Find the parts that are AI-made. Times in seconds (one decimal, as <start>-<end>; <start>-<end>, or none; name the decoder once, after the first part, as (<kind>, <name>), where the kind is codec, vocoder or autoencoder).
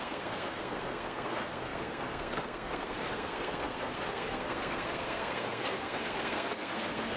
0.0-7.2 (codec, SNAC)